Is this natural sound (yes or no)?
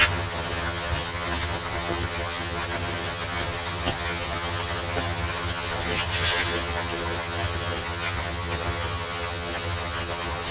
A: no